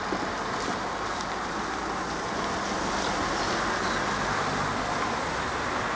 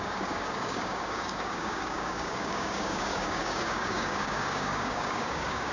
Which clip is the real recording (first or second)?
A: first